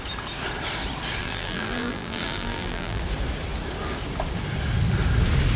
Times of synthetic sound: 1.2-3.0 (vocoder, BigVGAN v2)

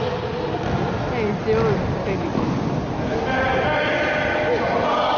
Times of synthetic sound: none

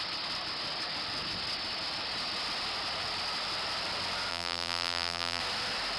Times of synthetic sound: 4.3-5.4 (vocoder, BigVGAN v2)

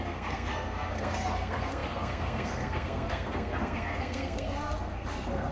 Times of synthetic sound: 0.0-5.5 (codec, SNAC)

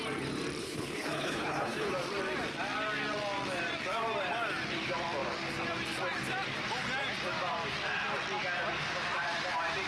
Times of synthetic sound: 0.6-1.9 (codec, HILCodec)

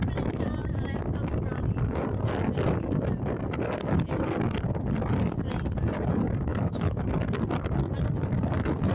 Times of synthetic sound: 6.5-7.1 (autoencoder, DAC-VAE)

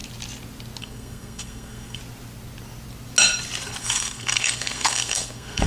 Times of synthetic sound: 0.8-2.0 (codec, SNAC); 3.8-5.7